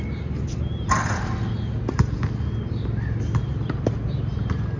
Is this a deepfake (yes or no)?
no